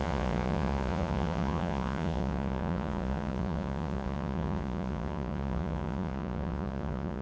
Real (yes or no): no